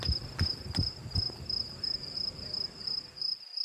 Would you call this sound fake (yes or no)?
no